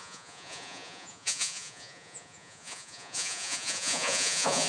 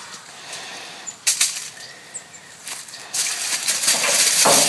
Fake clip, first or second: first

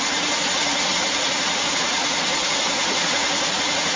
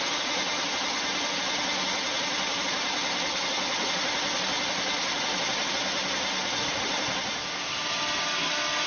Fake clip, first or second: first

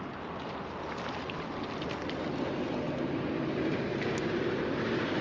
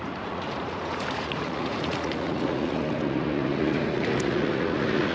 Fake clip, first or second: second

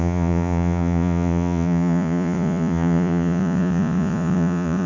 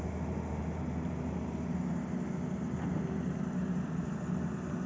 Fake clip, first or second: first